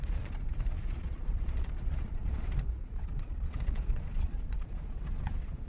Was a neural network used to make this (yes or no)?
yes